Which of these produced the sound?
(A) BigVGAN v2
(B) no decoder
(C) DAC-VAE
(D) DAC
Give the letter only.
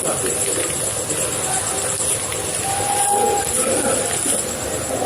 B